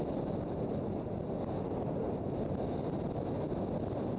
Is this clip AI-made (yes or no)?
no